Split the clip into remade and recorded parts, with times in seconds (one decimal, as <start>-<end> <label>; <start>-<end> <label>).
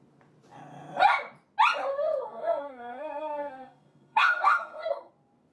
0.0-1.9 recorded; 1.9-5.1 remade; 5.1-5.5 recorded